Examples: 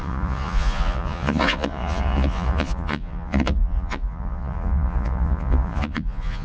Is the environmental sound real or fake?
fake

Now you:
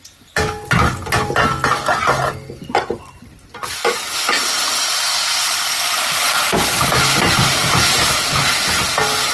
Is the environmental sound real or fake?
real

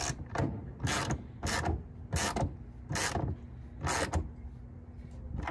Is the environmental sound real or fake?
real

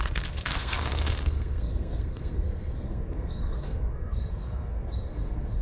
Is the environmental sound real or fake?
fake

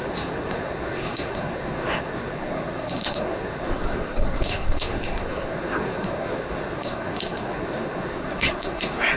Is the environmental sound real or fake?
fake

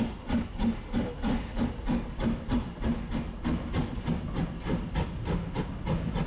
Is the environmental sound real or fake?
real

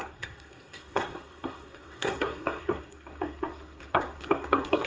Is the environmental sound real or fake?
fake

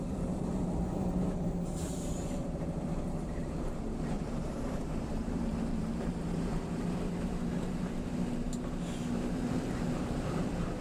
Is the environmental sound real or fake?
fake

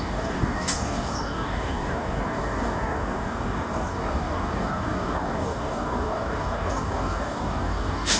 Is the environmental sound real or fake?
fake